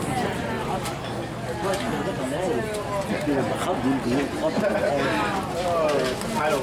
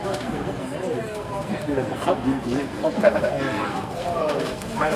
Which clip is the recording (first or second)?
first